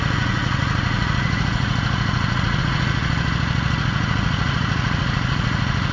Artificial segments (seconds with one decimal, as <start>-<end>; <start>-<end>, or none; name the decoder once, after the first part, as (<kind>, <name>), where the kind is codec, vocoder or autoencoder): 0.0-3.0 (vocoder, Vocos); 3.8-5.9